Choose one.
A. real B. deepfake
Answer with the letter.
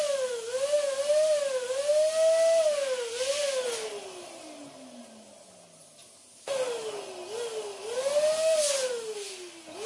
A